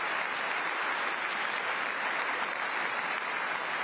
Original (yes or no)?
yes